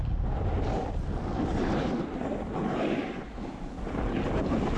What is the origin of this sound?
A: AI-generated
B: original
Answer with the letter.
B